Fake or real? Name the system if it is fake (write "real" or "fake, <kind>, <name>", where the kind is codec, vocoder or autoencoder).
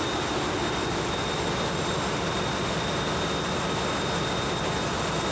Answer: real